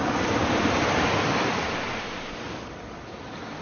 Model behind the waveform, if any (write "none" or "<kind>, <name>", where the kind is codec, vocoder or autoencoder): none